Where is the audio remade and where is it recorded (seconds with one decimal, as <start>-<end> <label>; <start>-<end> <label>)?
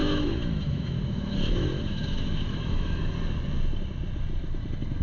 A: 0.0-3.0 remade; 3.0-5.0 recorded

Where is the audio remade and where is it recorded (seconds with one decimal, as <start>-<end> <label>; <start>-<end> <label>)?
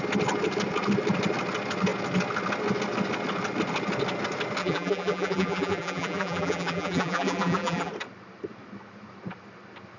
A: 0.0-4.6 recorded; 4.6-7.9 remade; 7.9-10.0 recorded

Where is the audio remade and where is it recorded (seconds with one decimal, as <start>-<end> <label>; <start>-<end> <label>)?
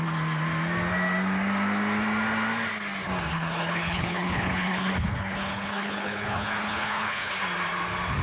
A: 0.0-3.3 recorded; 3.3-7.3 remade; 7.3-8.2 recorded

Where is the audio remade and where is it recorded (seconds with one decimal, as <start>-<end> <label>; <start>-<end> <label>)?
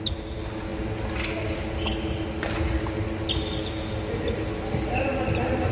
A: 0.0-5.7 recorded